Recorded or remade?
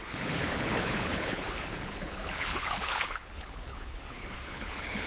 remade